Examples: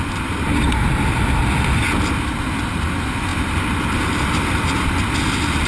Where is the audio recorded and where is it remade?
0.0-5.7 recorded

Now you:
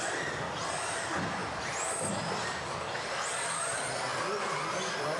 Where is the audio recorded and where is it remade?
0.0-1.4 remade; 1.4-2.6 recorded; 2.6-5.2 remade

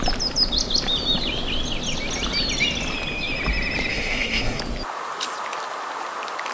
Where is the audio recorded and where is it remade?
0.0-3.9 recorded; 3.9-4.6 remade; 4.6-6.5 recorded

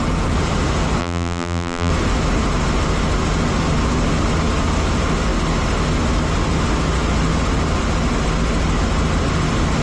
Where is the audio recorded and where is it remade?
0.0-1.0 recorded; 1.0-1.9 remade; 1.9-9.8 recorded